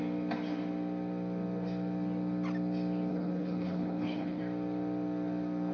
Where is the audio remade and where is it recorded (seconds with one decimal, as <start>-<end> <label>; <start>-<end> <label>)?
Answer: 0.0-3.1 recorded; 3.1-4.4 remade; 4.4-5.7 recorded